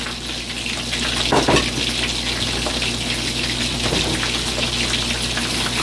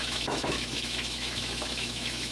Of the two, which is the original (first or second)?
first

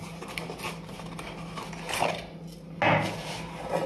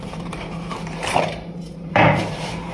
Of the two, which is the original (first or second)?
first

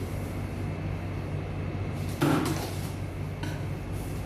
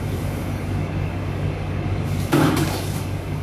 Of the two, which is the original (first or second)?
first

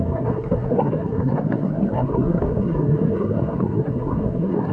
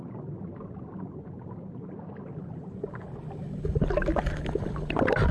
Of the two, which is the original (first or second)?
second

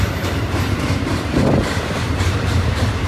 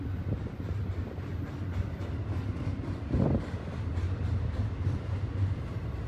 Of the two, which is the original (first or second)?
second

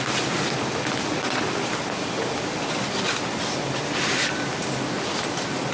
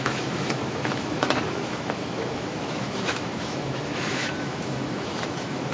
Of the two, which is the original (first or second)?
first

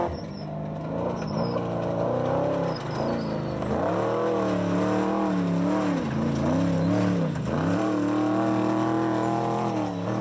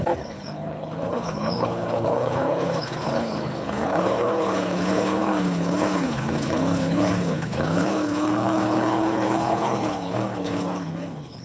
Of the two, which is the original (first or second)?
first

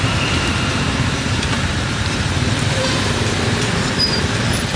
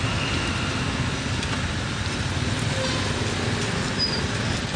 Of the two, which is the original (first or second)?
second